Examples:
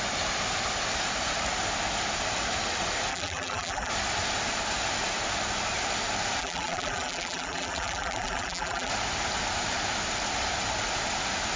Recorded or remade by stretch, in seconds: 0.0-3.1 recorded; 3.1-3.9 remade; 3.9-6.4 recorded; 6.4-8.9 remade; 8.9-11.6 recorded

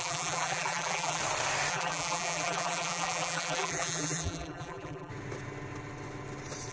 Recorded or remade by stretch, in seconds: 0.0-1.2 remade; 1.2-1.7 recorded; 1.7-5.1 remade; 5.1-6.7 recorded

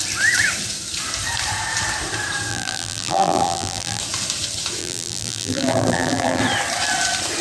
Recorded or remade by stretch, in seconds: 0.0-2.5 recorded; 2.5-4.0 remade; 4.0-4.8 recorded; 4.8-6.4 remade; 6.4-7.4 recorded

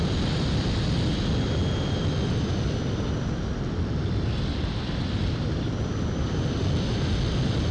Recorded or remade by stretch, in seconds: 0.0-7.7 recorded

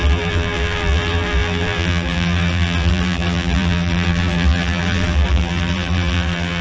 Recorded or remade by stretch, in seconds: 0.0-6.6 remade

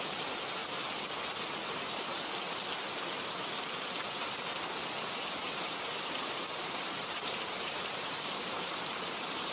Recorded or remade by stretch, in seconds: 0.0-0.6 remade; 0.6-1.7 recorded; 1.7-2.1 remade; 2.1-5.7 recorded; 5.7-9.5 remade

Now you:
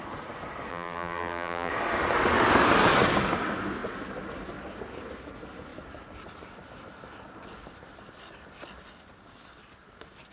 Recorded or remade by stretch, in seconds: 0.0-0.7 recorded; 0.7-1.7 remade; 1.7-10.3 recorded

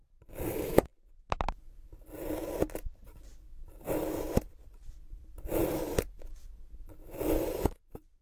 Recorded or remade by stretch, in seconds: 0.0-0.9 remade; 0.9-2.7 recorded; 2.7-3.3 remade; 3.3-4.3 recorded; 4.3-8.2 remade